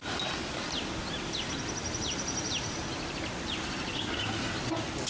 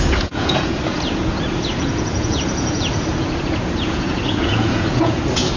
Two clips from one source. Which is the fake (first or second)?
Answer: second